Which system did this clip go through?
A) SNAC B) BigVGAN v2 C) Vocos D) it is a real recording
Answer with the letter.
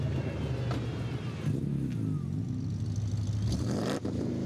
D